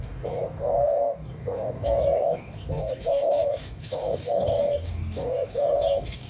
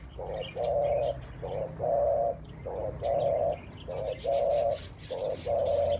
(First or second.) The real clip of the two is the second